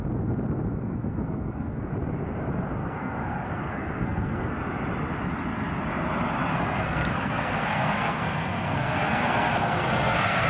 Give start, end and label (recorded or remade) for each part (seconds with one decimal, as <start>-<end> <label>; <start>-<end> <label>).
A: 0.0-0.7 recorded; 0.7-1.9 remade; 1.9-2.8 recorded; 2.8-4.5 remade; 4.5-6.5 recorded; 6.5-10.5 remade